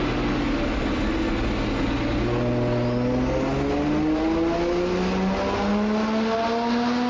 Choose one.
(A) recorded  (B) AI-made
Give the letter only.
A